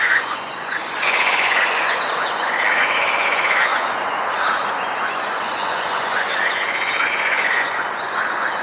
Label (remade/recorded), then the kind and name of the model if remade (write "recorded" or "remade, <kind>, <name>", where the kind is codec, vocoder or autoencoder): remade, vocoder, Vocos